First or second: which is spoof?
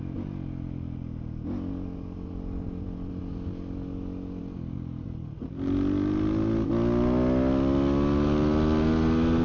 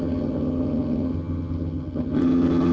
second